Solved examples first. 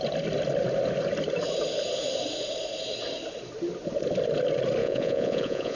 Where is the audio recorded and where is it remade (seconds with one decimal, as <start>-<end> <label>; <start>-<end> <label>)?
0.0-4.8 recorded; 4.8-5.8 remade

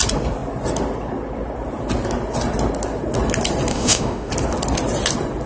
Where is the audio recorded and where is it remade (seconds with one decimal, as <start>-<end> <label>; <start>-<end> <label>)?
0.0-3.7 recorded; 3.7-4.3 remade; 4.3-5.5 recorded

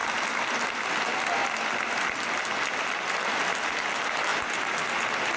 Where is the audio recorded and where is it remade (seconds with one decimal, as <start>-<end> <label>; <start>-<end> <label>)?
0.0-5.4 recorded